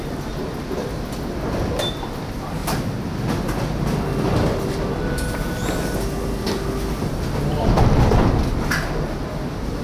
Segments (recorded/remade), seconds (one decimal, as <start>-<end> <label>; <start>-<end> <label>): 0.0-9.8 recorded